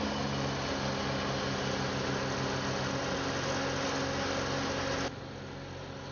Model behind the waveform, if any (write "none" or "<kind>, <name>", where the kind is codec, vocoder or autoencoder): none